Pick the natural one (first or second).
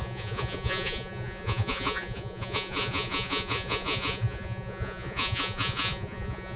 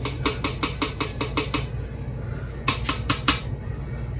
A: second